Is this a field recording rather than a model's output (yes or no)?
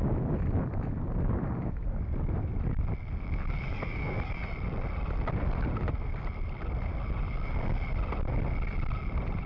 no